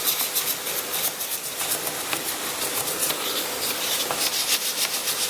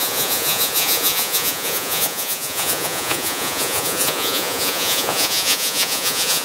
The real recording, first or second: first